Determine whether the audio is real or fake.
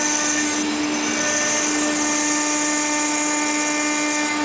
real